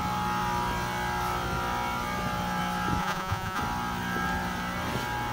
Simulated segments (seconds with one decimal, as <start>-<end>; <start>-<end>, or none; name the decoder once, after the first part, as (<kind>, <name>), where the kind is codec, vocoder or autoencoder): 3.0-3.6 (vocoder, Vocos)